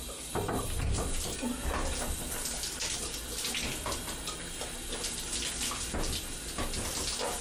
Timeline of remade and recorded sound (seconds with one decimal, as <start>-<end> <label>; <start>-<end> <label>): 0.0-7.4 recorded

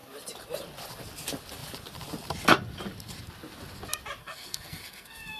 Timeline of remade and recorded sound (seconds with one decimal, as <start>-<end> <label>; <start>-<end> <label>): 0.0-4.2 recorded; 4.2-5.4 remade

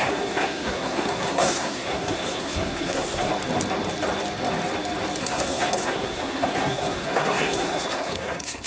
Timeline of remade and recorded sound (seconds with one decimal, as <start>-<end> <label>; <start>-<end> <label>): 0.0-3.3 remade; 3.3-5.2 recorded; 5.2-8.7 remade

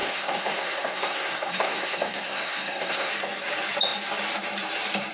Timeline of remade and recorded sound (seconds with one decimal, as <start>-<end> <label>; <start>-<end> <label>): 0.0-3.1 remade; 3.1-5.1 recorded

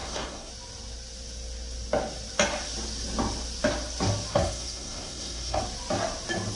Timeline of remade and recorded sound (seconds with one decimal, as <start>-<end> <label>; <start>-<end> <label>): 0.0-0.5 remade; 0.5-4.3 recorded; 4.3-5.6 remade; 5.6-6.6 recorded

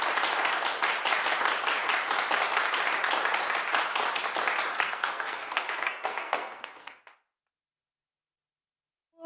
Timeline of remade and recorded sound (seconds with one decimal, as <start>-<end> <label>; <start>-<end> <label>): 0.0-4.7 recorded; 4.7-7.0 remade; 7.0-9.3 recorded

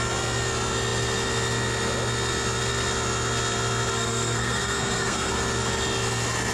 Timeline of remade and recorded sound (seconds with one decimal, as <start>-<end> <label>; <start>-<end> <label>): 0.0-3.9 recorded; 3.9-5.3 remade; 5.3-6.5 recorded

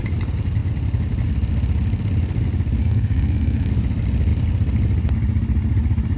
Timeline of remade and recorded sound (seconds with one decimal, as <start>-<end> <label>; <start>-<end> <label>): 0.0-2.8 recorded; 2.8-3.7 remade; 3.7-6.2 recorded